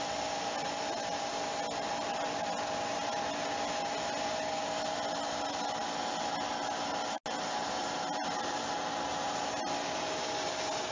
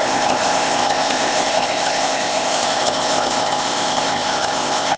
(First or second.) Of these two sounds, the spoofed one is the second